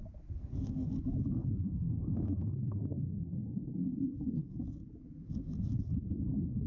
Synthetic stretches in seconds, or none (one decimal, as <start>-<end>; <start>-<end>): 0.4-0.9; 1.4-3.7